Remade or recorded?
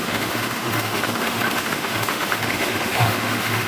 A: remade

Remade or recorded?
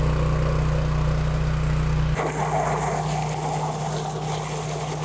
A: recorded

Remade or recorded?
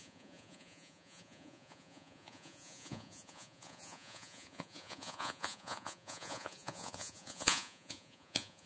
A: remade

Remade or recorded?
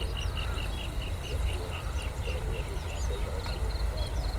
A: recorded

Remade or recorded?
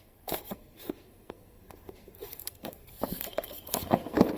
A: remade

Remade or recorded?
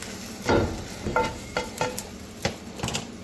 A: recorded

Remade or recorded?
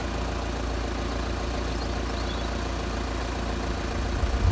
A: recorded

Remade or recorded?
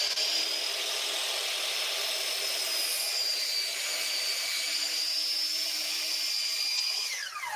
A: recorded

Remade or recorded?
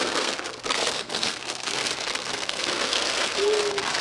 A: remade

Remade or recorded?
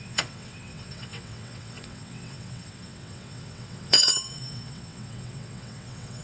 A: remade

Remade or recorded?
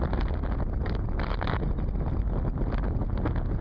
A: recorded